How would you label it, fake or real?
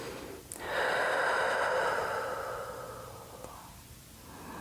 real